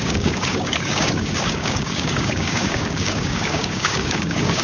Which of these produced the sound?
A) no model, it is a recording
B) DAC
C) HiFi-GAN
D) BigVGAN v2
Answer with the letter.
B